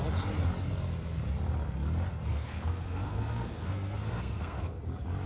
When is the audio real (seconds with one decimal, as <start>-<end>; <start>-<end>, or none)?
0.0-2.3; 4.8-5.3

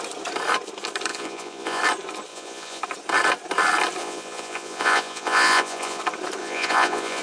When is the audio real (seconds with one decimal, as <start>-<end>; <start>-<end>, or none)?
0.0-1.1; 1.8-2.3; 2.8-4.0; 6.0-6.4

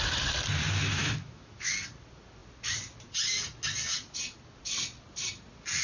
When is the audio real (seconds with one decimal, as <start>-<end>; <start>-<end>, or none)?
0.0-0.9; 1.7-5.8